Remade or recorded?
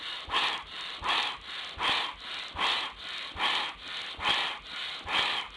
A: recorded